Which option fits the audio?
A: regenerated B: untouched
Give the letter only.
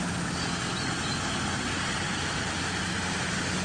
B